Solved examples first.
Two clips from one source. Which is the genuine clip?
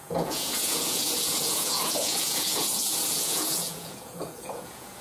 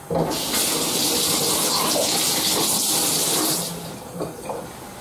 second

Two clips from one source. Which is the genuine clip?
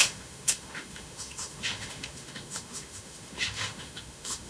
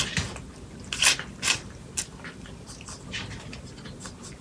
second